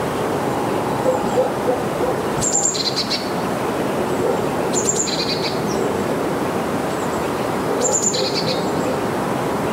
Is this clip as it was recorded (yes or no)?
yes